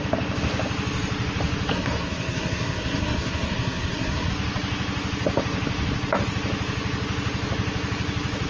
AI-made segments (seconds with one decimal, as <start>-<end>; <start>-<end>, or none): 1.7-4.3